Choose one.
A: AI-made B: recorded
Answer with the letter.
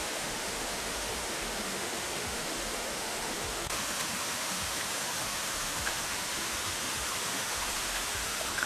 A